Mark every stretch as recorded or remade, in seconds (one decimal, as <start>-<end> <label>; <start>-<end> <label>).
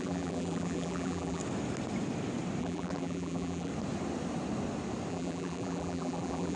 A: 0.0-1.4 remade; 1.4-2.6 recorded; 2.6-3.7 remade; 3.7-5.1 recorded; 5.1-6.6 remade